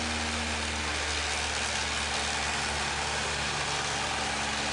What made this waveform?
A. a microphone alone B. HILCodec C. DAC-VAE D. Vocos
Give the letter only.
A